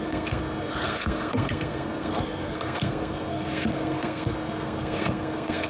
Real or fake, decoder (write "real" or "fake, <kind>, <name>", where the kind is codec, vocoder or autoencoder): fake, codec, SNAC